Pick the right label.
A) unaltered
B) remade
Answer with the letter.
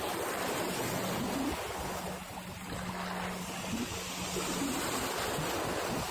A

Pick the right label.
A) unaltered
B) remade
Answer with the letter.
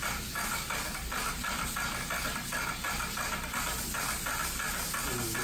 A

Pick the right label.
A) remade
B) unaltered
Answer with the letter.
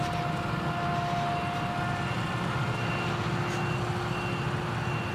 B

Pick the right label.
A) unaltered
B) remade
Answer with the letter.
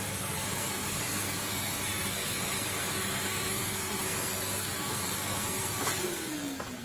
B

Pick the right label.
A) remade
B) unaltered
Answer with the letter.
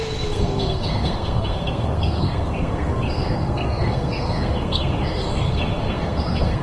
A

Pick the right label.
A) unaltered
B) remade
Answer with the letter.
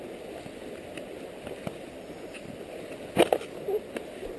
A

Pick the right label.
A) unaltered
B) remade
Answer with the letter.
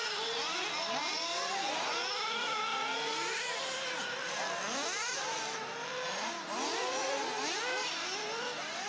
A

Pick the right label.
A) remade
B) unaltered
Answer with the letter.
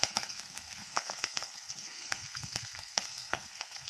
A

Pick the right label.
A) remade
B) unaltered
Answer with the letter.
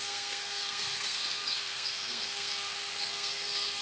A